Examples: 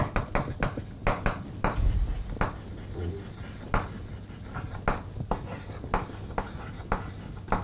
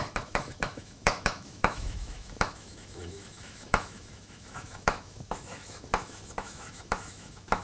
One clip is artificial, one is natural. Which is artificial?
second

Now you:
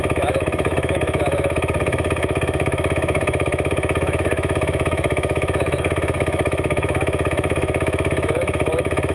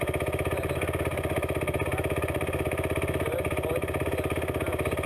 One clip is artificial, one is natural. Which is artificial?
first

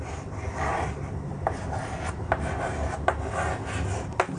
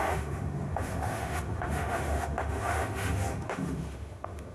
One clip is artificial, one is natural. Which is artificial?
second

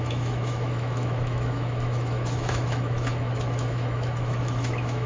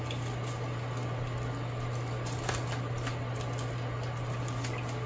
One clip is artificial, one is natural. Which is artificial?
first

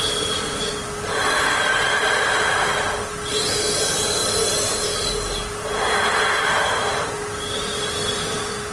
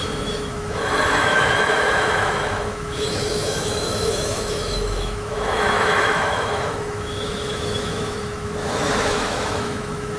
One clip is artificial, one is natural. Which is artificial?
second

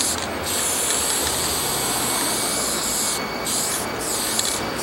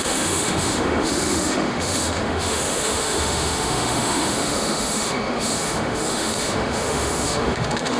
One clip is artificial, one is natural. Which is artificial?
second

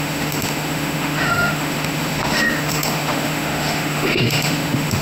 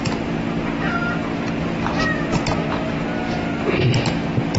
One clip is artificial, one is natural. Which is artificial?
first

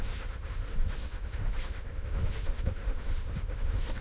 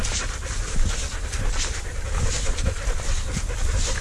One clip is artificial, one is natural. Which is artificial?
first